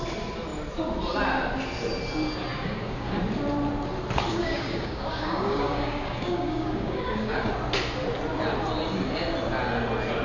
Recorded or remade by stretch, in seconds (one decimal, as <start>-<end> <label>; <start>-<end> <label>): 0.0-2.5 recorded; 2.5-3.2 remade; 3.2-4.3 recorded; 4.3-7.5 remade; 7.5-10.2 recorded